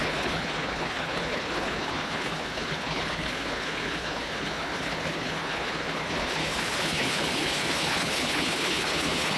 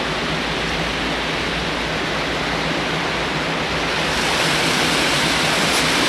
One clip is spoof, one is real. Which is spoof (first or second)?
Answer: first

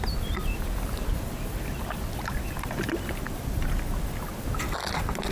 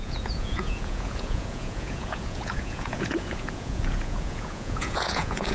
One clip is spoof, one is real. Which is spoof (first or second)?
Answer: second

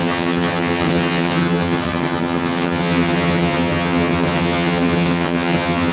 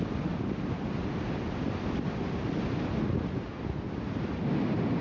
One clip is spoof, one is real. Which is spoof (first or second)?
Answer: first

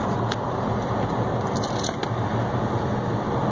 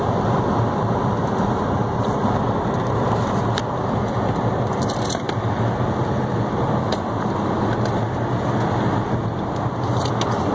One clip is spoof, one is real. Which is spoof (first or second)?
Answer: second